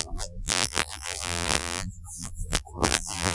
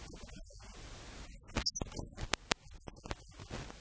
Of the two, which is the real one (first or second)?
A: second